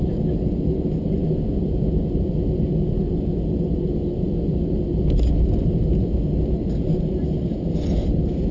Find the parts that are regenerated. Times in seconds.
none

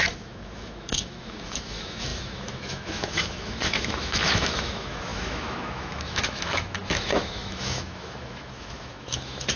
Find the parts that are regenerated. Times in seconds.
0.0-9.6 (autoencoder, DAC-VAE)